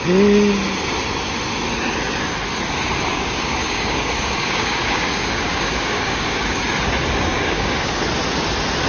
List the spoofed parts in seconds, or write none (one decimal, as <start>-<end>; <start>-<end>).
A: 3.1-6.6; 7.3-8.0